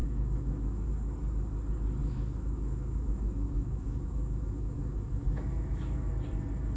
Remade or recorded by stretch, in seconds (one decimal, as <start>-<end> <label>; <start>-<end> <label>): 0.0-0.9 remade; 0.9-2.0 recorded; 2.0-6.1 remade; 6.1-6.8 recorded